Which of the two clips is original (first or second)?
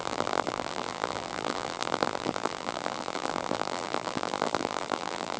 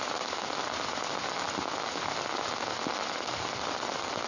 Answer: second